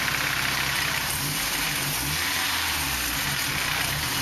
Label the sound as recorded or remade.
remade